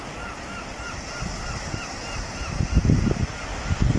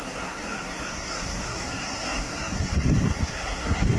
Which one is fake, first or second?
second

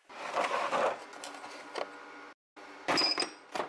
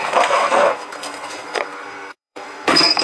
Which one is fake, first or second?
second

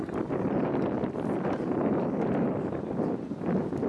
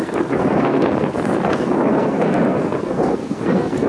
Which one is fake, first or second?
second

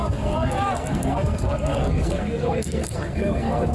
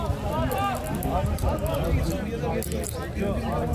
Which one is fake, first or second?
first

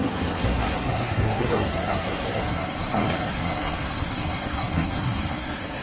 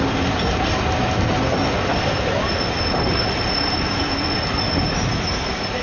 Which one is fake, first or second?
first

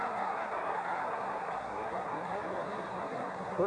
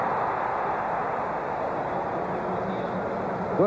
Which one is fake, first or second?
first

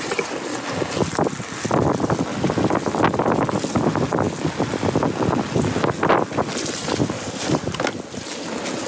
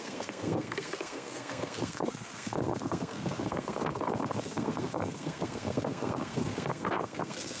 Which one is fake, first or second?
second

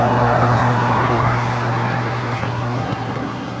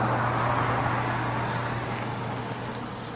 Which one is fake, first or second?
first